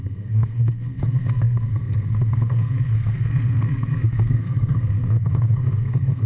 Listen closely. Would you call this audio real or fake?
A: fake